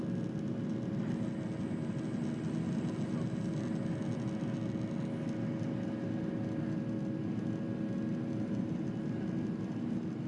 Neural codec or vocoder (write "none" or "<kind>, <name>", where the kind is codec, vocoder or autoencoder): none